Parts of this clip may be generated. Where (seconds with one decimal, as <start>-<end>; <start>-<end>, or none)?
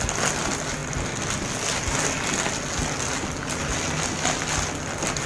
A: none